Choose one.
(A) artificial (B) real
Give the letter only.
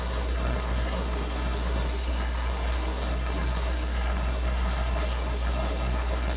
A